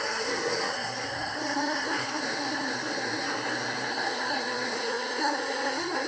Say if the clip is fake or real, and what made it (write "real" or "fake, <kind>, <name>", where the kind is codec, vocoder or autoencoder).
fake, codec, SNAC